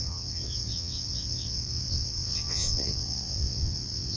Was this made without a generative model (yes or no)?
no